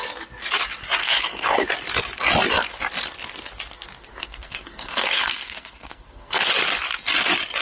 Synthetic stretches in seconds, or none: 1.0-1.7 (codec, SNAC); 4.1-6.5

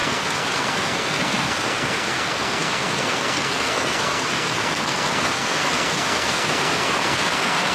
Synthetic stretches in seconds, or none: 0.0-7.7 (codec, SNAC)

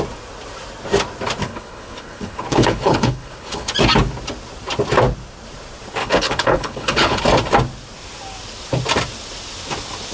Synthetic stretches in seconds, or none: 1.4-3.7 (codec, HILCodec); 6.0-7.2

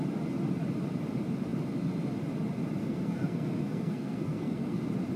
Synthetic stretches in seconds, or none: 2.8-4.8 (codec, SNAC)

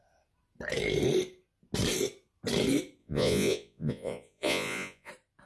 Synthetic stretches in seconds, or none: 3.0-5.1 (vocoder, Vocos)